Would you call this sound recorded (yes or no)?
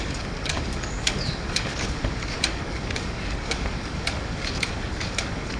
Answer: no